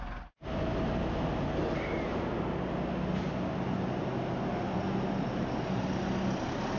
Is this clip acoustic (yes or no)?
yes